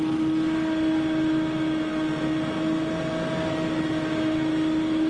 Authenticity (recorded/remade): recorded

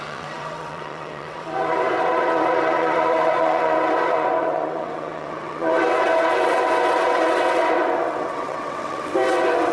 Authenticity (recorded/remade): remade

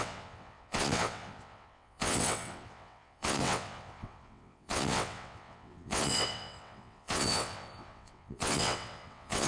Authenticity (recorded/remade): remade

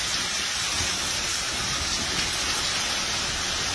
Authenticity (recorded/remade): recorded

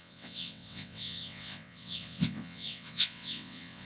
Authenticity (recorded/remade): remade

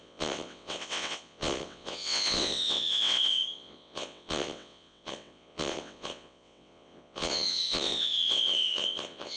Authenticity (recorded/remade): remade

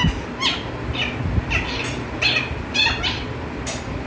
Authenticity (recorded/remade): recorded